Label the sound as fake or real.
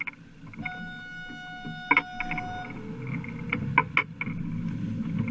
real